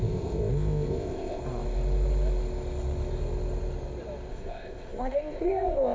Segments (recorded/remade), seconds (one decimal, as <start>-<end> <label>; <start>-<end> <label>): 0.0-1.4 remade; 1.4-4.3 recorded; 4.3-5.9 remade